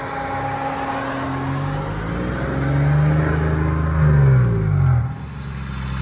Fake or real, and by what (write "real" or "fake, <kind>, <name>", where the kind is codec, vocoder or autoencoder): real